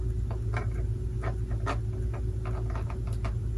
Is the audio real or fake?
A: real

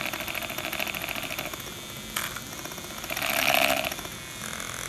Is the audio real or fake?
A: real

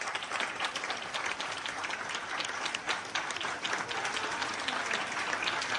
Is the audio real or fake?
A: real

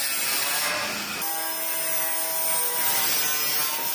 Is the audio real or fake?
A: real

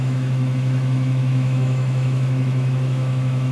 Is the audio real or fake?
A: fake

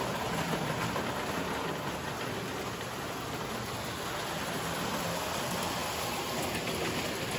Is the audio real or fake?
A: real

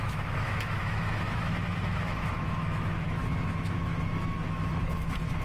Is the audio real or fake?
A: fake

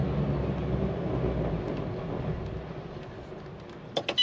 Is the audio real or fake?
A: real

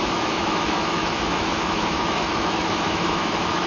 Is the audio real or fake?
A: fake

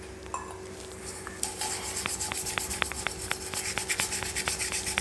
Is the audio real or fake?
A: real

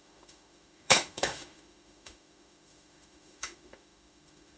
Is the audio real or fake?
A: fake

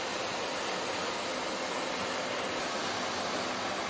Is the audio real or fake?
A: real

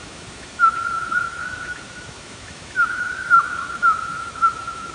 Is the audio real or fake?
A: fake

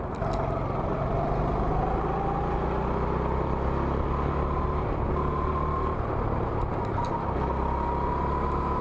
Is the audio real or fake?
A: real